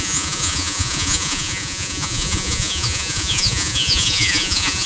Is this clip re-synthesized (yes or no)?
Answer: yes